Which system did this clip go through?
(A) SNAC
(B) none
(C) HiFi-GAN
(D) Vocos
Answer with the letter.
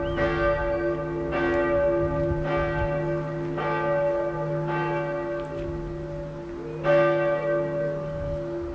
B